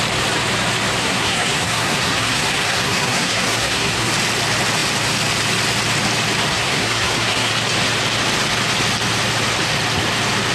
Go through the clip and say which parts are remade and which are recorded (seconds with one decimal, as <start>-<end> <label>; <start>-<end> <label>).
0.0-1.0 recorded; 1.0-4.1 remade; 4.1-6.5 recorded; 6.5-7.5 remade; 7.5-10.5 recorded